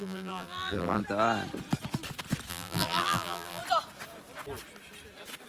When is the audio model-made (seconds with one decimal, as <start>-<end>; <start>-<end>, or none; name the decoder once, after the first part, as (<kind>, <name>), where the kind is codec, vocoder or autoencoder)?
0.0-1.0 (vocoder, BigVGAN v2); 2.5-3.6